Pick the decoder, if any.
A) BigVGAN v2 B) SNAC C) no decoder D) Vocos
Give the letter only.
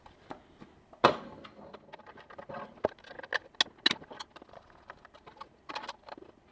C